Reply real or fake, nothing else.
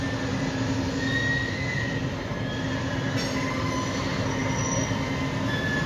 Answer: real